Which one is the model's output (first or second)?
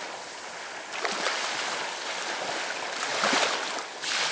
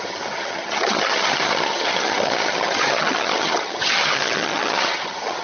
second